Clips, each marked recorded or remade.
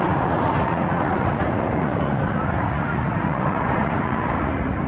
remade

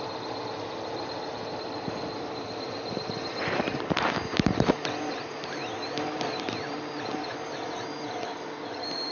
remade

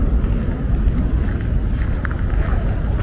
recorded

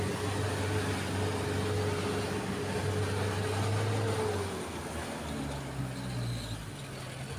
recorded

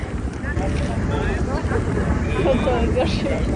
recorded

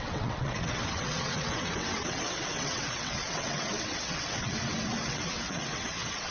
remade